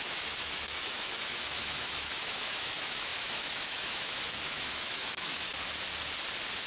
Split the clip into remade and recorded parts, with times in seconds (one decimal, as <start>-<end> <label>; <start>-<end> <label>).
0.0-5.5 remade; 5.5-6.7 recorded